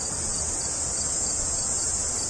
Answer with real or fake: real